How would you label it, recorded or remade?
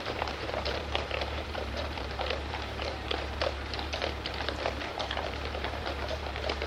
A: remade